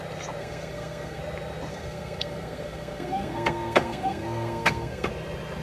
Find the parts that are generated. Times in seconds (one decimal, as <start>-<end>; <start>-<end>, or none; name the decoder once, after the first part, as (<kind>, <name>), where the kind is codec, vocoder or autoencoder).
0.4-1.2 (codec, SNAC); 1.7-5.1